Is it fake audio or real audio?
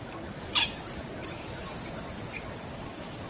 real